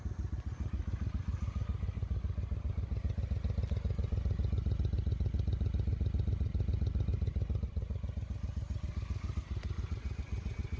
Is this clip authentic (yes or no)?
yes